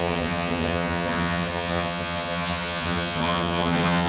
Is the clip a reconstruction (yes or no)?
yes